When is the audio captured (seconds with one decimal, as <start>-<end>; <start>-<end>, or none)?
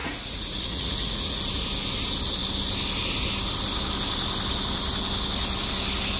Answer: 1.4-6.2